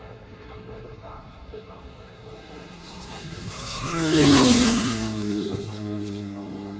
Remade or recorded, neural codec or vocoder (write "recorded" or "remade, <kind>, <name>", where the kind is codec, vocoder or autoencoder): remade, codec, SNAC